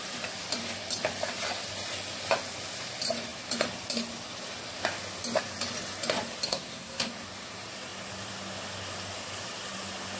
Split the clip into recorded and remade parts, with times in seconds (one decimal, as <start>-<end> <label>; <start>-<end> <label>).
0.0-6.5 recorded; 6.5-7.1 remade; 7.1-10.2 recorded